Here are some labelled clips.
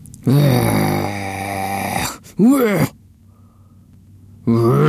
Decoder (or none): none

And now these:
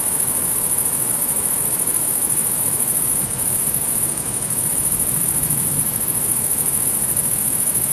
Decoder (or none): autoencoder, DAC-VAE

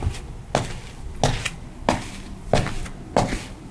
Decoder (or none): none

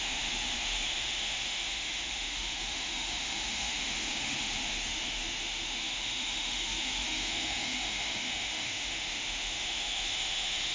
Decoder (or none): autoencoder, DAC-VAE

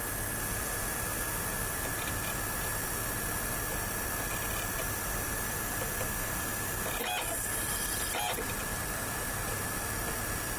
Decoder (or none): none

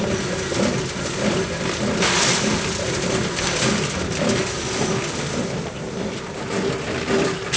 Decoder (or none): none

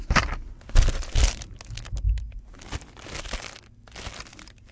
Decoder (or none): none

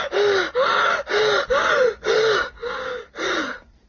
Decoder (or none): none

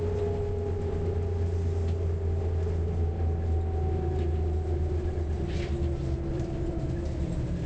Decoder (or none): none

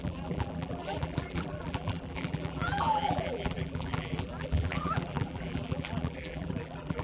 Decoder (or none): vocoder, BigVGAN v2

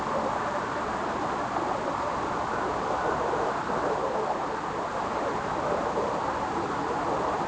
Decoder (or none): none